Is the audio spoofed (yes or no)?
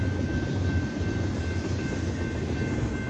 no